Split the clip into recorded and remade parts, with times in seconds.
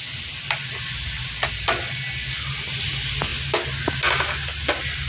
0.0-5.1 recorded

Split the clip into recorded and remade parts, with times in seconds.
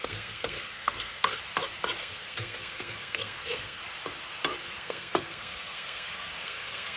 0.0-1.4 remade; 1.4-2.0 recorded; 2.0-3.8 remade; 3.8-4.6 recorded; 4.6-7.0 remade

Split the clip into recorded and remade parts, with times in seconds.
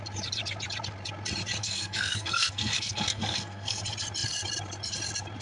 0.0-1.6 recorded; 1.6-3.8 remade; 3.8-5.4 recorded